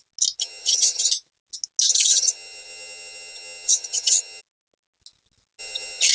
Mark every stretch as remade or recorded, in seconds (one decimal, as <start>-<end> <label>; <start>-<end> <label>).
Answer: 0.0-0.4 recorded; 0.4-1.1 remade; 1.1-1.9 recorded; 1.9-4.4 remade; 4.4-5.6 recorded; 5.6-6.1 remade